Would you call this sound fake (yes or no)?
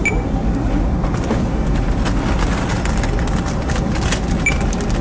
no